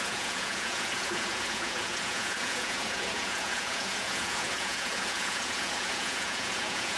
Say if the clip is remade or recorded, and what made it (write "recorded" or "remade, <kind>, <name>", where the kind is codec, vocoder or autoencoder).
remade, vocoder, Vocos